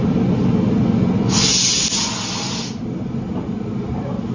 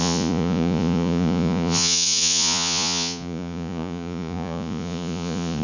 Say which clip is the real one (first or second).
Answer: first